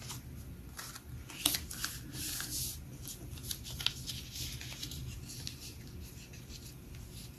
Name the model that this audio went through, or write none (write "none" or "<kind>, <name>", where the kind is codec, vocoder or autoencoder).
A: none